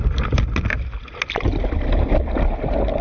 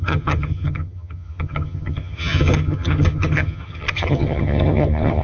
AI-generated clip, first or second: second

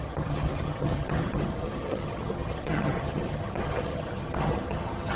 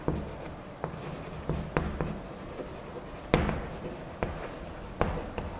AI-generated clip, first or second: first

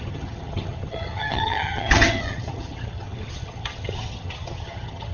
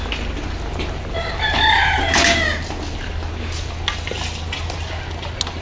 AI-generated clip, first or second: first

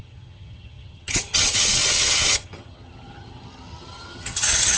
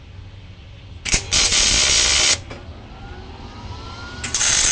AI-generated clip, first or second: first